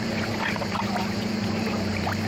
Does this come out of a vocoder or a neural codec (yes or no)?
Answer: yes